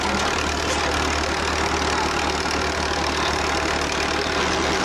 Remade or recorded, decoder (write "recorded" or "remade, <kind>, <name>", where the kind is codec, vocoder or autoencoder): recorded